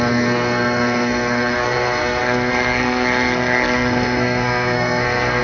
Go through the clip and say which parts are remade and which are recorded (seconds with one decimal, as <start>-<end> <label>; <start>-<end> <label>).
0.0-5.4 remade